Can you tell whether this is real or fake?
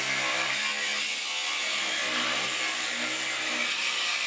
real